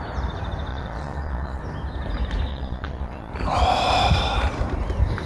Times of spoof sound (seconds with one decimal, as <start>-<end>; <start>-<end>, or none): 0.7-1.6; 2.5-3.3

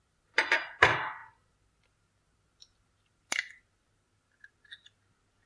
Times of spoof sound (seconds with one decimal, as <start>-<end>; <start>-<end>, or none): none

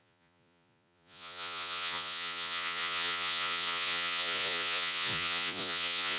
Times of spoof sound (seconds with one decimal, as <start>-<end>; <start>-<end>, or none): 0.0-6.2

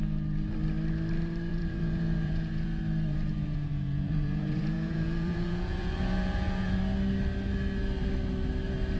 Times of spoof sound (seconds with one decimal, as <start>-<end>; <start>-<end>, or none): 1.5-2.8; 3.3-6.8

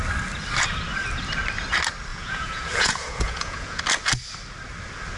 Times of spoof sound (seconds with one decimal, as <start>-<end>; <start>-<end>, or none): 2.1-3.8

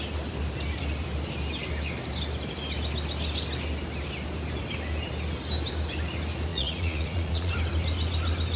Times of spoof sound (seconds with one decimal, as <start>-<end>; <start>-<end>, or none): 6.5-7.5

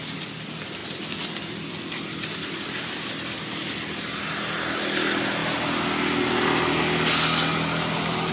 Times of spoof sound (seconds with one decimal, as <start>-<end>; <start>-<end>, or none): none